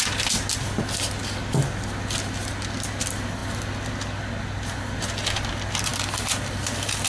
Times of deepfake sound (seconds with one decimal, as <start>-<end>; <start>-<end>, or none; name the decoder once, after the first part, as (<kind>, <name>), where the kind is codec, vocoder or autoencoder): none